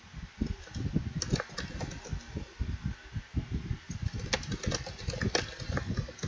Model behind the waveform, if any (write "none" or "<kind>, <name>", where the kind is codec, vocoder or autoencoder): none